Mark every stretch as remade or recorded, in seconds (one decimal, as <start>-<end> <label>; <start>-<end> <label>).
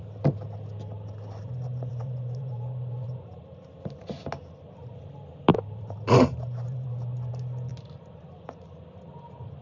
0.0-1.9 recorded; 1.9-3.3 remade; 3.3-5.5 recorded; 5.5-7.3 remade; 7.3-9.6 recorded